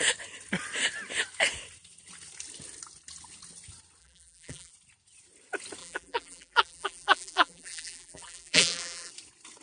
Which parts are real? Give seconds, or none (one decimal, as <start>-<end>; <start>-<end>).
0.0-4.0; 4.7-5.8; 9.1-9.6